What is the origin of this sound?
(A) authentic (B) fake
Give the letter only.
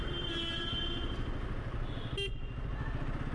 A